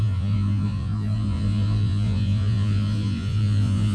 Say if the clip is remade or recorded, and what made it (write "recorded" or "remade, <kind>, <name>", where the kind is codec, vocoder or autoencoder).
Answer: remade, vocoder, Vocos